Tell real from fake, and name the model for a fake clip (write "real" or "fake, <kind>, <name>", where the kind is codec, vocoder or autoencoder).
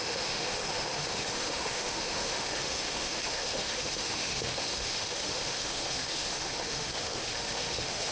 fake, autoencoder, DAC-VAE